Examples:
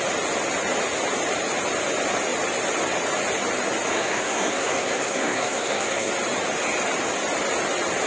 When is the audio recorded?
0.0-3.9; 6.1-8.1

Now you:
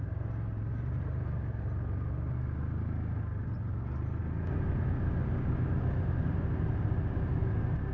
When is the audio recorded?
0.0-7.9

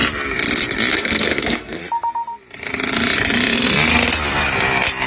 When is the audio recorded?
0.0-0.9; 1.8-5.1

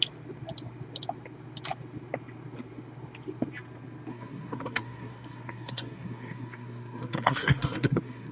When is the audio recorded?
0.0-4.1

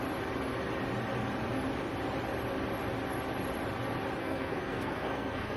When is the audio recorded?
0.0-4.2